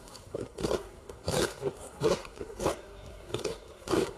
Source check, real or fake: fake